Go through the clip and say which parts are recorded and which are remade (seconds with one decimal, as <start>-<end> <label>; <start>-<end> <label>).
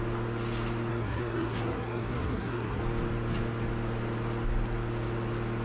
0.0-0.9 recorded; 0.9-2.8 remade; 2.8-5.6 recorded